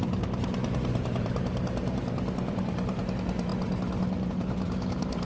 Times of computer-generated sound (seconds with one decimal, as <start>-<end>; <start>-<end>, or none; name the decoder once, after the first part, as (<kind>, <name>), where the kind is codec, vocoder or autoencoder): 0.0-3.5 (vocoder, BigVGAN v2); 4.3-5.2